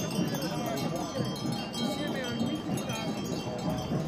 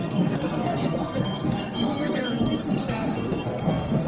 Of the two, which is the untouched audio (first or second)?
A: first